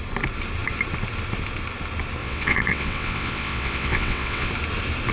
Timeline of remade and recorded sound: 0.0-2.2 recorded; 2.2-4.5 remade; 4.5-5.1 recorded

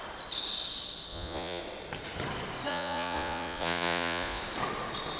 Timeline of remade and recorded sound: 0.0-1.1 recorded; 1.1-1.6 remade; 1.6-2.7 recorded; 2.7-4.4 remade; 4.4-5.2 recorded

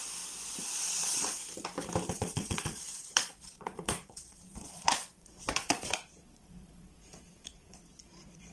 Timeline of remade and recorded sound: 0.0-0.9 recorded; 0.9-1.4 remade; 1.4-2.1 recorded; 2.1-8.5 remade

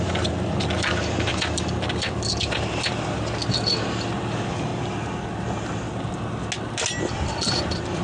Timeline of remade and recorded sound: 0.0-3.4 remade; 3.4-4.1 recorded; 4.1-4.7 remade; 4.7-7.0 recorded; 7.0-8.0 remade

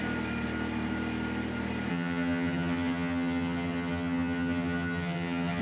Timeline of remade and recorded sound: 0.0-1.9 recorded; 1.9-5.6 remade

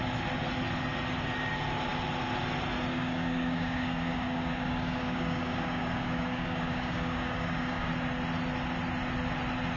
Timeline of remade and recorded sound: 0.0-2.9 recorded; 2.9-7.9 remade; 7.9-9.8 recorded